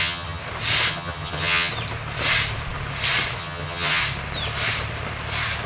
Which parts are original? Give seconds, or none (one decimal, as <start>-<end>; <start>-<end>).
0.4-0.9; 1.7-3.4; 4.0-5.7